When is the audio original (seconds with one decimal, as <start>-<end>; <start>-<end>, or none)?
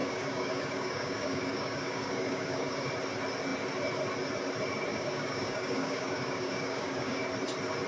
2.9-4.9; 7.2-7.9